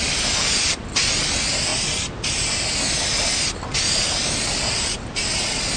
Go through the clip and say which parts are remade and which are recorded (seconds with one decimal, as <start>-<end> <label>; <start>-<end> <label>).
0.0-5.8 recorded